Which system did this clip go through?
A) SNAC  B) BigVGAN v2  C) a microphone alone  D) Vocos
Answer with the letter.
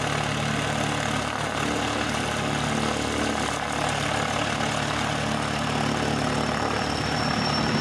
C